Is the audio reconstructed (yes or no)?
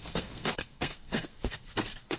yes